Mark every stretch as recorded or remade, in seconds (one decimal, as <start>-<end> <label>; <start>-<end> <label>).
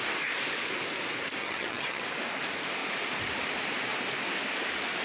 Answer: 0.0-1.4 recorded; 1.4-2.0 remade; 2.0-5.0 recorded